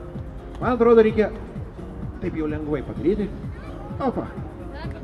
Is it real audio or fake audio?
real